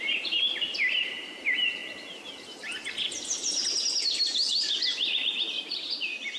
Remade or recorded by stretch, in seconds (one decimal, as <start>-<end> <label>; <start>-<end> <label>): 0.0-1.8 remade; 1.8-5.6 recorded; 5.6-6.4 remade